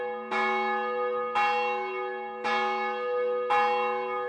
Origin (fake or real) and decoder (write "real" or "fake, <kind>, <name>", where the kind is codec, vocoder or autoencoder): real